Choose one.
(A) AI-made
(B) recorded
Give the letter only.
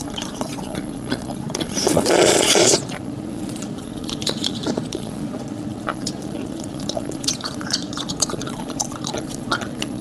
A